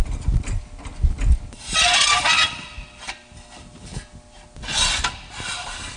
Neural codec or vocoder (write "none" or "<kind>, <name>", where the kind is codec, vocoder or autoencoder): none